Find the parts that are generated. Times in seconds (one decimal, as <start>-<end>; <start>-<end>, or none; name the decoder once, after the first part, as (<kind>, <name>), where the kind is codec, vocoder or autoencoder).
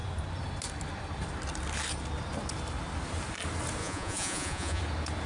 3.8-4.8 (vocoder, Vocos)